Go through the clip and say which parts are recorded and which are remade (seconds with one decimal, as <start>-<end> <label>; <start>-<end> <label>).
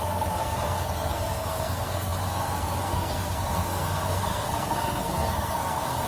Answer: 0.0-6.1 remade